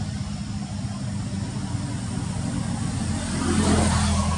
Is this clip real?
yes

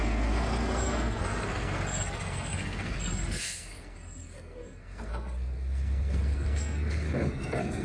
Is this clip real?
no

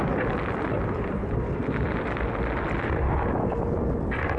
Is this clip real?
yes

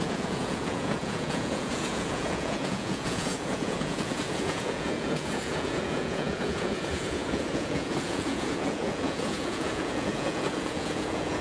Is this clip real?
no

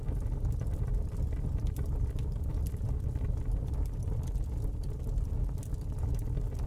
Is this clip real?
yes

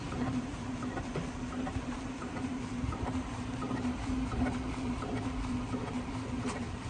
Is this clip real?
no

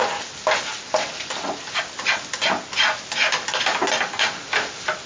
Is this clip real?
yes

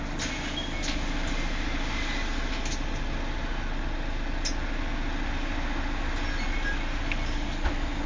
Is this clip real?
yes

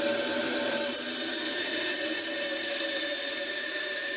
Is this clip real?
no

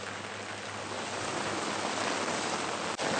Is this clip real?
yes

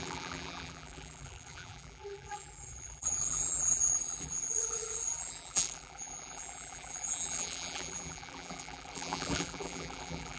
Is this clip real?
no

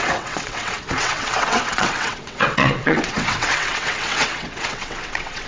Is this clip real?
no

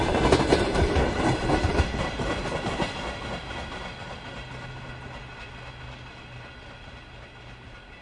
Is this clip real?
yes